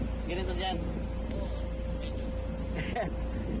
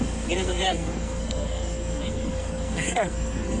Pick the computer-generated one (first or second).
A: second